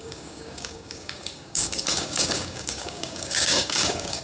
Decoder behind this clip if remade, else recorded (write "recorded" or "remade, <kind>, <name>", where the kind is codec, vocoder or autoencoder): remade, codec, DAC